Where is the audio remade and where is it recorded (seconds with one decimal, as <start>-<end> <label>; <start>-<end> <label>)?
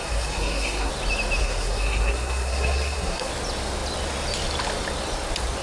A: 0.0-0.9 remade; 0.9-1.4 recorded; 1.4-3.3 remade; 3.3-5.6 recorded